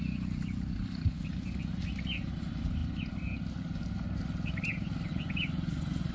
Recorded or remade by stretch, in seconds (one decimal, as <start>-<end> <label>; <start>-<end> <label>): 0.0-5.1 recorded; 5.1-6.1 remade